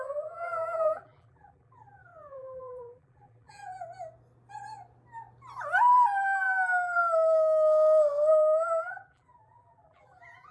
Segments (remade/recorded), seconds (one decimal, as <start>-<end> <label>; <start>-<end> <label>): 0.0-3.6 remade; 3.6-8.3 recorded; 8.3-10.5 remade